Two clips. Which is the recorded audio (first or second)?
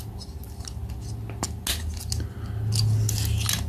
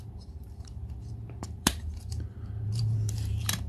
first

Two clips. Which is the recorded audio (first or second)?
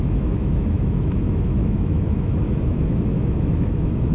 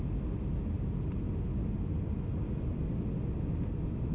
second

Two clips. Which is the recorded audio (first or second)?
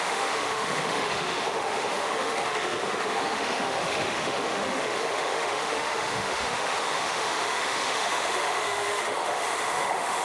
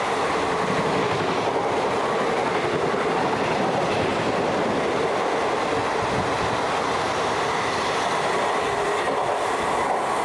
second